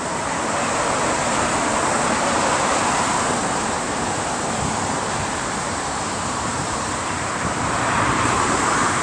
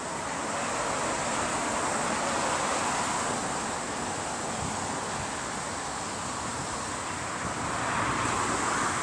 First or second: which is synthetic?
first